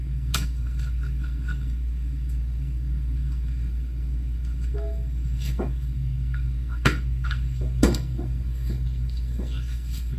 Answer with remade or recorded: remade